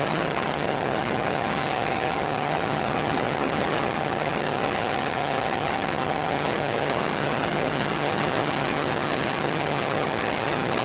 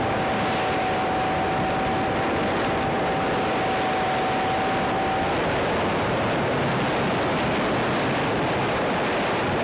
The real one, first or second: second